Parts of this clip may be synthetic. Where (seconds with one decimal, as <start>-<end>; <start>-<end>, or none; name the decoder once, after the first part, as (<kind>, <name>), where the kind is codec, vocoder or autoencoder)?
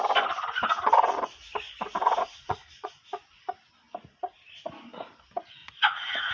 2.0-2.9 (vocoder, Vocos); 5.6-6.3